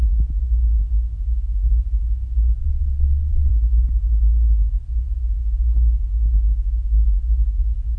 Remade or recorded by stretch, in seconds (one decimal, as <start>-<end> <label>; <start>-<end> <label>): 0.0-2.6 recorded; 2.6-3.5 remade; 3.5-8.0 recorded